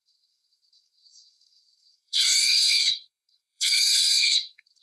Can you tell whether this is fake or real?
fake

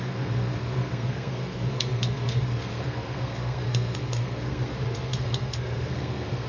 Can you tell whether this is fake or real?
fake